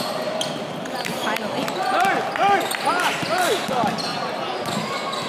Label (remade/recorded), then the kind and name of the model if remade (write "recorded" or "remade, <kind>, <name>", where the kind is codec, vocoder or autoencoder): recorded